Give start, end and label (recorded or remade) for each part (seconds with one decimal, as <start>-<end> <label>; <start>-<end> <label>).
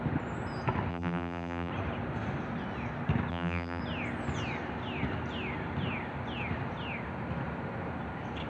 0.0-0.9 recorded; 0.9-1.7 remade; 1.7-3.3 recorded; 3.3-3.8 remade; 3.8-8.5 recorded